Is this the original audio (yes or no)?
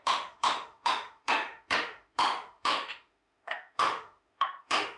no